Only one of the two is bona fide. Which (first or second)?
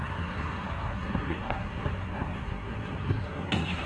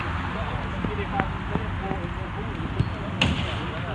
second